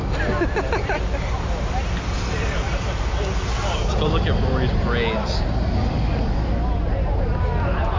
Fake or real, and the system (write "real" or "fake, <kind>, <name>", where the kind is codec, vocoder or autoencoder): real